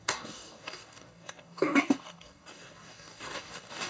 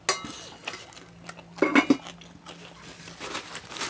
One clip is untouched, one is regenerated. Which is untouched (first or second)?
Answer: second